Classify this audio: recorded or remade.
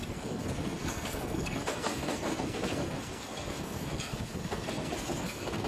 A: remade